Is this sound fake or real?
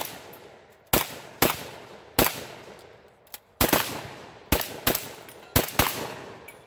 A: real